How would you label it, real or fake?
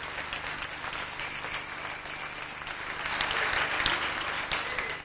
real